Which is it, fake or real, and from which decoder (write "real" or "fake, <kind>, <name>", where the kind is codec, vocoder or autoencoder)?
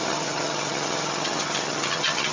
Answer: fake, vocoder, HiFi-GAN